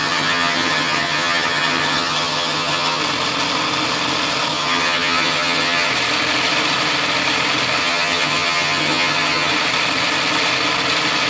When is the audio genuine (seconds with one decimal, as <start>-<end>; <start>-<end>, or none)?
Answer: 3.0-4.5; 5.9-7.8; 9.5-11.3